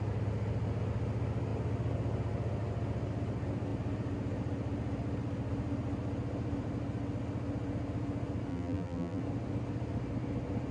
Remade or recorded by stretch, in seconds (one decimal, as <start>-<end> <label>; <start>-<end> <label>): 0.0-8.5 recorded; 8.5-9.2 remade; 9.2-10.7 recorded